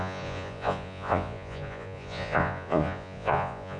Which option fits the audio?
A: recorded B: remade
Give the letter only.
B